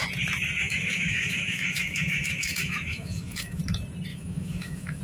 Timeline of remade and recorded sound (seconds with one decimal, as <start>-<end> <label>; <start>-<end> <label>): 0.0-0.6 recorded; 0.6-3.6 remade; 3.6-4.1 recorded; 4.1-5.0 remade

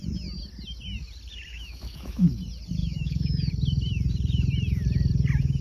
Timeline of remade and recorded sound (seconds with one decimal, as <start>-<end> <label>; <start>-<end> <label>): 0.0-1.5 recorded; 1.5-2.3 remade; 2.3-2.8 recorded; 2.8-3.5 remade; 3.5-5.6 recorded

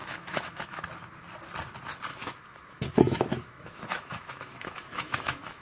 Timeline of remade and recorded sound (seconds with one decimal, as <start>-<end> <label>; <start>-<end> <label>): 0.0-0.8 remade; 0.8-2.1 recorded; 2.1-5.6 remade

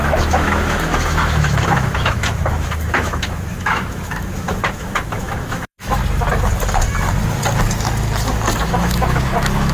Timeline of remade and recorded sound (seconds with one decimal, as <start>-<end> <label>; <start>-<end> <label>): 0.0-6.0 remade; 6.0-8.6 recorded; 8.6-9.7 remade

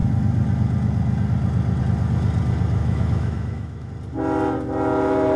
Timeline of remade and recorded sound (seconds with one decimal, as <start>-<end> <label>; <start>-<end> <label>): 0.0-2.8 recorded; 2.8-3.9 remade; 3.9-5.4 recorded

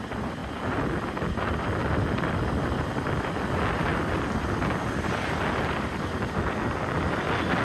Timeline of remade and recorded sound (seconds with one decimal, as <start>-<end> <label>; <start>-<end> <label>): 0.0-7.6 recorded